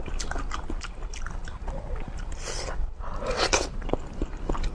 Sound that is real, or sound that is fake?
real